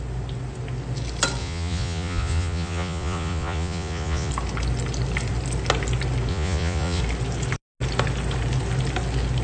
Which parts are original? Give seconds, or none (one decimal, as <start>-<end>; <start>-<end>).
0.0-1.4; 4.3-6.3; 7.0-9.4